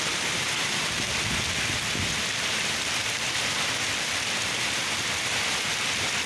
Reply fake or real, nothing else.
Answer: fake